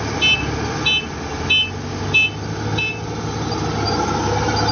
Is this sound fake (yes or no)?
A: no